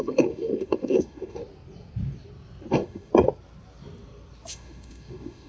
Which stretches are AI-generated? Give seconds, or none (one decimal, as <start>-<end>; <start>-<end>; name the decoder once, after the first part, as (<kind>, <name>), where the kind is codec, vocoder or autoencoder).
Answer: 0.0-1.4 (autoencoder, DAC-VAE); 2.7-3.1; 4.5-5.5